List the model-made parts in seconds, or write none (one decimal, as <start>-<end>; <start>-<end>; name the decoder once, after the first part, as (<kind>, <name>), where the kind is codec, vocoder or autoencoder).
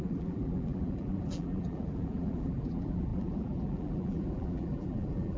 0.0-5.4 (vocoder, BigVGAN v2)